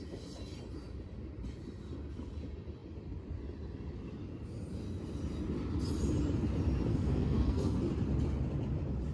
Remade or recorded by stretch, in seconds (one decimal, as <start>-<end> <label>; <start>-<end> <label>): 0.0-6.9 recorded; 6.9-7.8 remade; 7.8-9.1 recorded